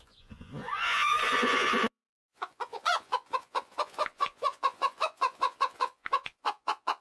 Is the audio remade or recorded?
remade